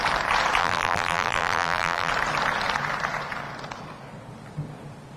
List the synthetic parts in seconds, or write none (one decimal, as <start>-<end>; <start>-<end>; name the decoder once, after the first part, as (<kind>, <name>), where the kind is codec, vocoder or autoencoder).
0.6-2.1 (vocoder, BigVGAN v2)